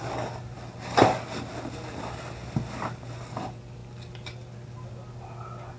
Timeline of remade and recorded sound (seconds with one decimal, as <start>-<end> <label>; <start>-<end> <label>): 0.0-5.8 recorded